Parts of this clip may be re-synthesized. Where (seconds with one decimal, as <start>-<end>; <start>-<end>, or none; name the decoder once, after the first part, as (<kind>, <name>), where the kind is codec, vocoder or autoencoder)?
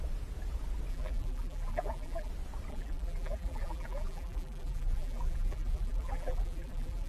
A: 0.9-2.3 (vocoder, BigVGAN v2); 2.7-7.1